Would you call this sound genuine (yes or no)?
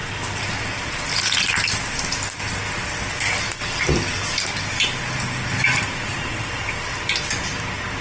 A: yes